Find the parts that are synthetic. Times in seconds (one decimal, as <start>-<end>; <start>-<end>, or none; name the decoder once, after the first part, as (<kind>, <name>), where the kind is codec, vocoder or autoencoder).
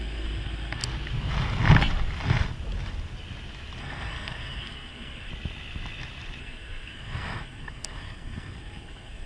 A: 0.0-0.8 (codec, SNAC); 3.8-5.3; 6.4-9.3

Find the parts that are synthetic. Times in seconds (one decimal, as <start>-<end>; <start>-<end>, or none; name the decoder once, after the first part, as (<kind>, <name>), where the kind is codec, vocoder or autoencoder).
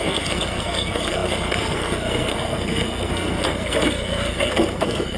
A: 0.0-5.2 (codec, SNAC)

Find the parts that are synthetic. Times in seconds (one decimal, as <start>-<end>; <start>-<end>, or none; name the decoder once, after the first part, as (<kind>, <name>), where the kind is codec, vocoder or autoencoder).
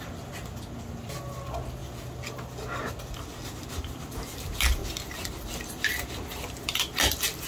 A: 4.8-6.1 (vocoder, BigVGAN v2)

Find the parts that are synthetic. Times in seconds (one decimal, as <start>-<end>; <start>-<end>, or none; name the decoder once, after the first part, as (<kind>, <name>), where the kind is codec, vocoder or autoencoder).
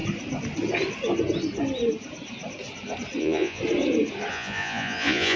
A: 3.2-3.6 (vocoder, Vocos); 4.3-5.4